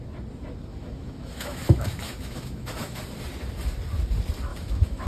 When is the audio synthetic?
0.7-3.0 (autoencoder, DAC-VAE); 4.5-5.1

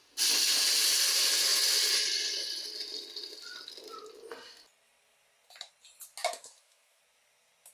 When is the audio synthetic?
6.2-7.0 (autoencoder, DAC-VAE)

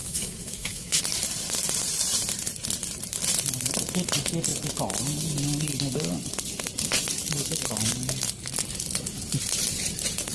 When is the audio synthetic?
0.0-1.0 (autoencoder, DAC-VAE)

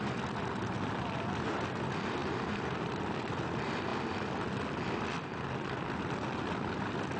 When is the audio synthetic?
none

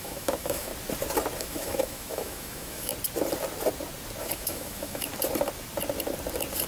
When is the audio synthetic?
0.0-0.7 (autoencoder, DAC-VAE); 1.4-2.9; 4.2-5.1